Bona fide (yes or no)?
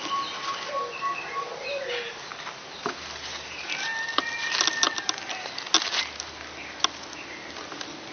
yes